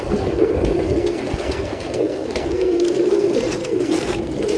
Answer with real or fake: fake